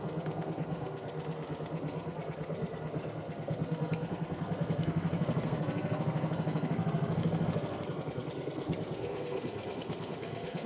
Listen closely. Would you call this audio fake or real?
fake